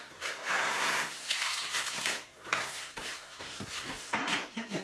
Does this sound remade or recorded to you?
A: remade